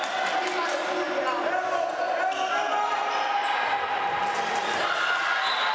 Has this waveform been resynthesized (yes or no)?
no